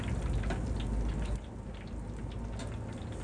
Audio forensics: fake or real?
real